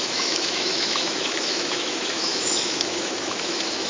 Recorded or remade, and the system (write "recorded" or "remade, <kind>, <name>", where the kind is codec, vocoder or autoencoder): remade, autoencoder, DAC-VAE